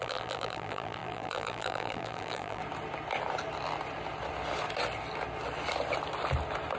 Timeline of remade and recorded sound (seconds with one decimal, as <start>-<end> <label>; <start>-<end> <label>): 0.0-2.6 remade; 2.6-6.8 recorded

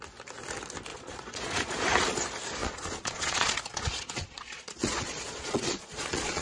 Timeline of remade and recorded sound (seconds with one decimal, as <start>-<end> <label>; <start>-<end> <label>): 0.0-0.9 recorded; 0.9-1.8 remade; 1.8-2.6 recorded; 2.6-6.4 remade

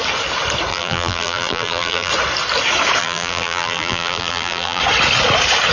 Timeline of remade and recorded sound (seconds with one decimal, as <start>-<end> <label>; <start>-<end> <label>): 0.0-0.7 recorded; 0.7-2.1 remade; 2.1-3.0 recorded; 3.0-4.8 remade; 4.8-5.7 recorded

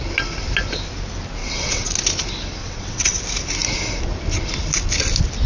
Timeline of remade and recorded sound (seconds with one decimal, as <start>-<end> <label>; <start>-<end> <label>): 0.0-1.4 recorded; 1.4-1.9 remade; 1.9-2.6 recorded; 2.6-3.2 remade; 3.2-5.5 recorded

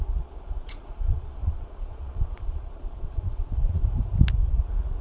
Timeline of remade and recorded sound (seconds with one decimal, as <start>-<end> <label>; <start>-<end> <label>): 0.0-3.8 remade; 3.8-5.0 recorded